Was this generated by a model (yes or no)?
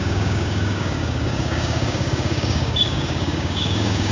yes